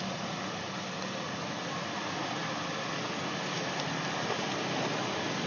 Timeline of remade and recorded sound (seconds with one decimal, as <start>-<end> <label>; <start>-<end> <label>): 0.0-5.5 recorded